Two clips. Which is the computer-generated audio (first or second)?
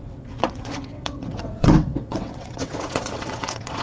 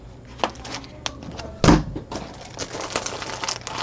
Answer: first